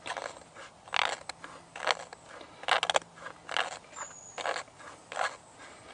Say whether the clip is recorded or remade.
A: recorded